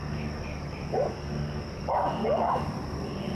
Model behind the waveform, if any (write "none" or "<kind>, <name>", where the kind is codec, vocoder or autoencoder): codec, DAC